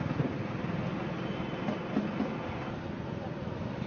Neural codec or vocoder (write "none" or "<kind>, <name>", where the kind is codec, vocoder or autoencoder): none